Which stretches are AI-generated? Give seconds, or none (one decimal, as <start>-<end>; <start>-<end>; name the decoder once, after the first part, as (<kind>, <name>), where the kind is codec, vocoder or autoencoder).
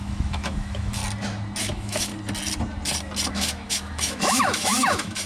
0.0-1.0 (autoencoder, DAC-VAE); 1.6-2.1; 3.3-5.3